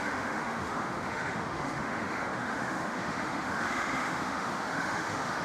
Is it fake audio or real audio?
fake